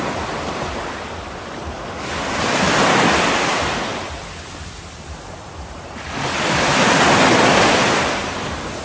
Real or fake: real